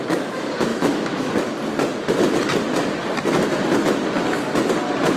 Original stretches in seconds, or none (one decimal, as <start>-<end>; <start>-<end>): 0.0-0.7; 1.3-5.2